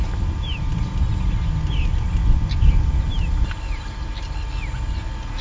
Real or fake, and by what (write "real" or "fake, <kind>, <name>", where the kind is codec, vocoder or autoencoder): real